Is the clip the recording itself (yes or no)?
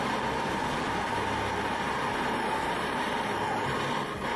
yes